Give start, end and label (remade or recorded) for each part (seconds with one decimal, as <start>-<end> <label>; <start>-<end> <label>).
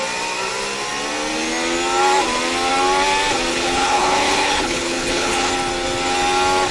0.0-3.5 recorded; 3.5-5.5 remade; 5.5-6.7 recorded